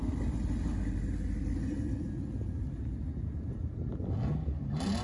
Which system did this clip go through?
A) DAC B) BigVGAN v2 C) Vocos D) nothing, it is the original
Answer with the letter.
D